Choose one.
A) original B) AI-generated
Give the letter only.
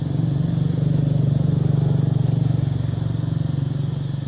A